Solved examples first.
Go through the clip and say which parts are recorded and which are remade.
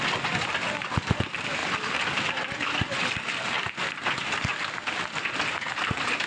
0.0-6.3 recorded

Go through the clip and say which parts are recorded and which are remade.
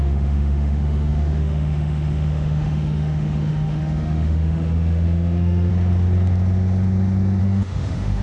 0.0-5.7 remade; 5.7-7.4 recorded; 7.4-8.2 remade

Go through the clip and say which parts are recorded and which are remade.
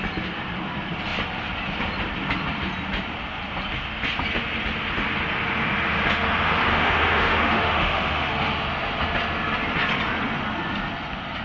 0.0-6.7 recorded; 6.7-8.3 remade; 8.3-11.4 recorded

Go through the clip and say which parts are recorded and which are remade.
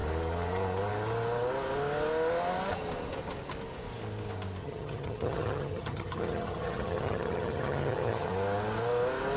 0.0-4.6 recorded; 4.6-8.3 remade; 8.3-9.4 recorded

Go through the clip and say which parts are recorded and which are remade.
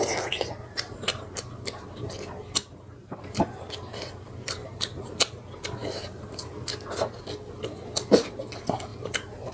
0.0-2.6 recorded; 2.6-3.2 remade; 3.2-4.6 recorded; 4.6-5.3 remade; 5.3-5.8 recorded; 5.8-6.5 remade; 6.5-8.9 recorded; 8.9-9.5 remade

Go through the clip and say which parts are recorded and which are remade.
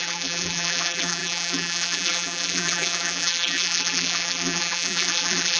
0.0-5.6 remade